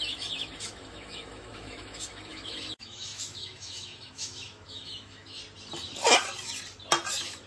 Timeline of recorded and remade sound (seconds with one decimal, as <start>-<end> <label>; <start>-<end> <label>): 0.0-5.4 remade; 5.4-7.1 recorded; 7.1-7.5 remade